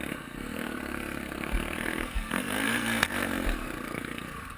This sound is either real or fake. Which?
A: fake